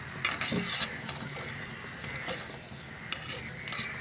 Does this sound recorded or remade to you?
recorded